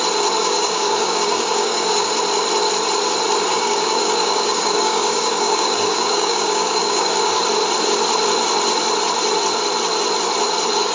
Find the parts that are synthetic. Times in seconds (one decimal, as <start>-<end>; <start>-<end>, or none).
0.4-2.1; 3.5-7.4